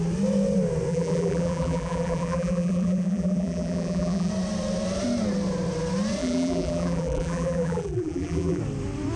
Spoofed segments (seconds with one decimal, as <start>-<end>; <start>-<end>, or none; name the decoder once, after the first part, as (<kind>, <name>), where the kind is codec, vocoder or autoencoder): 0.9-4.3 (vocoder, BigVGAN v2); 6.2-8.6